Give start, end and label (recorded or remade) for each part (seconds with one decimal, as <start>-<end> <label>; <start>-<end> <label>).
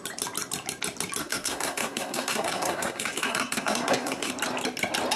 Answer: 0.0-1.2 recorded; 1.2-4.3 remade; 4.3-5.2 recorded